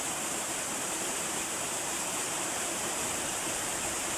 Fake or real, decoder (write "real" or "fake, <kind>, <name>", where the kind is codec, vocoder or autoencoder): fake, vocoder, BigVGAN v2